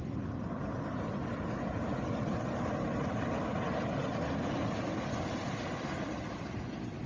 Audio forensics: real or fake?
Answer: real